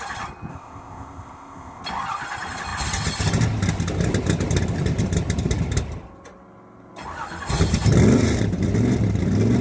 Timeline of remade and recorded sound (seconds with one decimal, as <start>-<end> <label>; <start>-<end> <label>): 0.0-0.5 recorded; 0.5-1.8 remade; 1.8-9.6 recorded